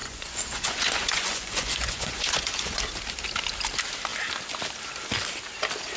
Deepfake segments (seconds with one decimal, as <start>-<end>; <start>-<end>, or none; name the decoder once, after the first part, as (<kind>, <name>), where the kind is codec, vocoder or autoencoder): 0.0-2.8 (vocoder, Vocos)